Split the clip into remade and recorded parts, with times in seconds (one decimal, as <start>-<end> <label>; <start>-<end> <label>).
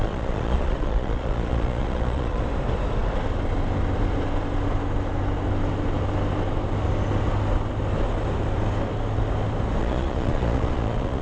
0.0-2.4 remade; 2.4-9.8 recorded; 9.8-11.2 remade